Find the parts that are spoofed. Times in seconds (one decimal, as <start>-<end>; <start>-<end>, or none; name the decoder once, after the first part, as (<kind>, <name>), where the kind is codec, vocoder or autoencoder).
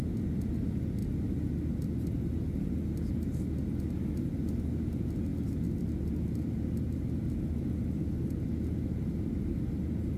none